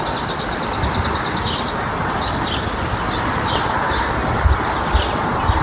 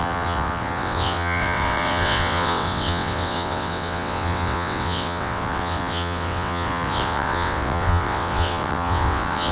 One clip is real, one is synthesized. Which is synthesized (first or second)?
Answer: second